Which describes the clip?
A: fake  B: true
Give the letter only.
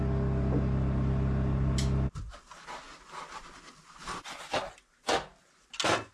B